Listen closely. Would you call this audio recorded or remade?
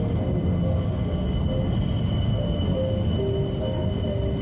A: recorded